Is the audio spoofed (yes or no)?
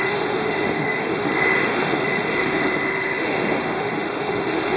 yes